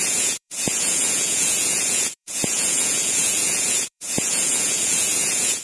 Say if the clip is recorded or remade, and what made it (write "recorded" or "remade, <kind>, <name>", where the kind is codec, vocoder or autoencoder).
remade, vocoder, Vocos